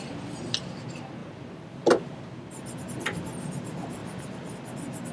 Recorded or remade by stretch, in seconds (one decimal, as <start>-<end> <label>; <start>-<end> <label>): 0.0-5.1 recorded